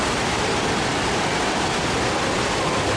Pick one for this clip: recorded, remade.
recorded